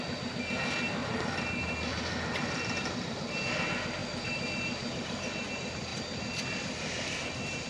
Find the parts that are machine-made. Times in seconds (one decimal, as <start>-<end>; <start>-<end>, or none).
1.0-3.4; 4.0-5.5; 5.9-7.7